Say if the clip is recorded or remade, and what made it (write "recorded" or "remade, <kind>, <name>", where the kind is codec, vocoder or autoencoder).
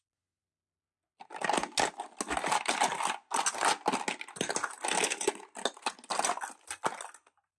recorded